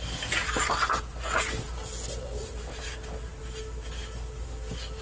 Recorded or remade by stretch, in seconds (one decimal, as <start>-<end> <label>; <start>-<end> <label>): 0.0-5.0 recorded